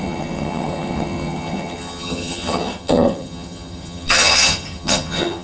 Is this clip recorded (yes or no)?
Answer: no